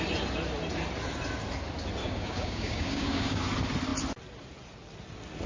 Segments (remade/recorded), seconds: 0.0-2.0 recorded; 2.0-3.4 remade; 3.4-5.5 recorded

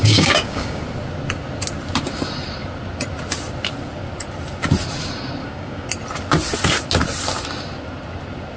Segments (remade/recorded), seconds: 0.0-0.8 remade; 0.8-5.4 recorded; 5.4-5.9 remade; 5.9-8.6 recorded

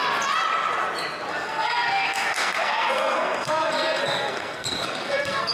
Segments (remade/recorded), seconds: 0.0-1.3 recorded; 1.3-5.5 remade

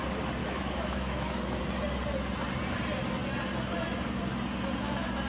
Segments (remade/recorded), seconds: 0.0-0.4 recorded; 0.4-1.6 remade; 1.6-5.3 recorded

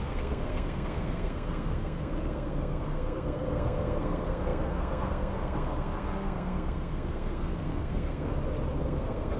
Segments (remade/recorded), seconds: 0.0-8.3 remade; 8.3-8.8 recorded; 8.8-9.4 remade